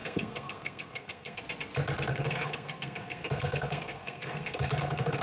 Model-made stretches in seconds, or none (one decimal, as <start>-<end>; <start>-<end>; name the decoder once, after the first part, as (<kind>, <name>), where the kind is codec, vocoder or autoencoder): 0.0-1.4 (codec, SNAC); 2.1-5.2